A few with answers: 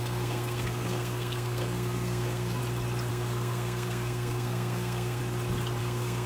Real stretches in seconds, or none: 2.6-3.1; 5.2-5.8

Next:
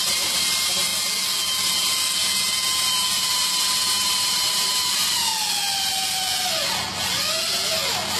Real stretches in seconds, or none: 0.9-1.6; 5.3-8.2